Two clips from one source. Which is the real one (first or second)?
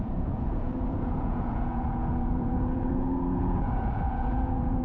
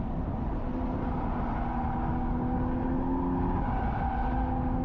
second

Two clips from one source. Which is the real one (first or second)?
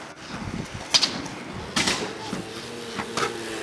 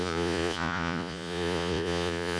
first